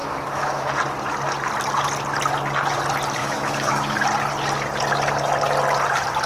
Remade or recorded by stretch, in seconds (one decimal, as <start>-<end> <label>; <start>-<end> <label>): 0.0-0.7 remade; 0.7-3.2 recorded; 3.2-4.0 remade; 4.0-6.3 recorded